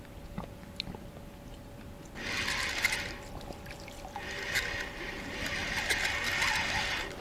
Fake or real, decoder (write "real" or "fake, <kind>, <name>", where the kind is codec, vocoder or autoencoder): real